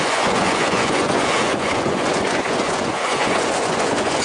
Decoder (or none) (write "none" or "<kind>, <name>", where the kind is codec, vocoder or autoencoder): vocoder, Vocos